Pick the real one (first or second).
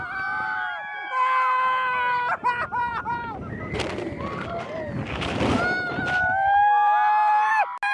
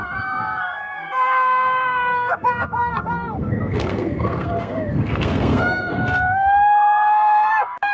first